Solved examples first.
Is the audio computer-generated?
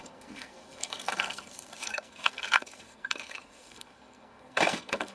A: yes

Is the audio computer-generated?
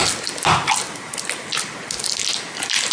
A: no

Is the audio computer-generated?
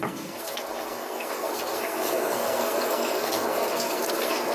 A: yes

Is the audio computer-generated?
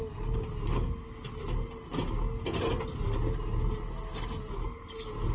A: no